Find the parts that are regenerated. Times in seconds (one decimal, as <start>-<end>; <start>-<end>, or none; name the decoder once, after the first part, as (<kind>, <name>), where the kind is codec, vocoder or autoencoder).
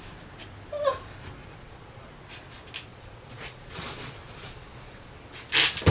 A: 1.4-2.1 (vocoder, Vocos); 2.9-5.1